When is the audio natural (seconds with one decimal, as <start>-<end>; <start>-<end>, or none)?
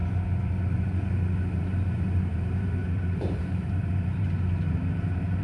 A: 0.0-1.6